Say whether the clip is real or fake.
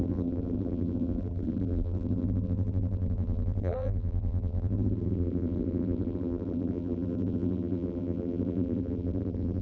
fake